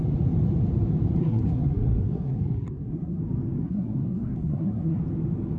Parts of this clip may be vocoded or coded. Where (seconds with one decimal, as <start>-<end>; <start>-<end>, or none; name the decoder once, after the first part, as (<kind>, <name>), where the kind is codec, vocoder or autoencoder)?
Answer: 1.2-3.2 (codec, SNAC); 3.6-5.0